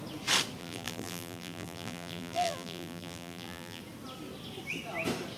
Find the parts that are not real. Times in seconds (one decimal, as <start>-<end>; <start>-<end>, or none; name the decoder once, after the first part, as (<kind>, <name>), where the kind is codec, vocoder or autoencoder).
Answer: 0.6-3.8 (vocoder, BigVGAN v2)